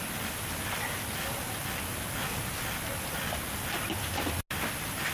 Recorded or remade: recorded